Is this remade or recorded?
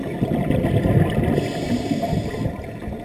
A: recorded